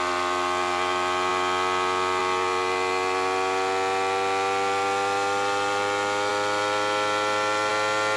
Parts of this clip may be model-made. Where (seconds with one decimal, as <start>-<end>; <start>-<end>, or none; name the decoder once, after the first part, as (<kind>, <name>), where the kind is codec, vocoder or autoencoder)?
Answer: none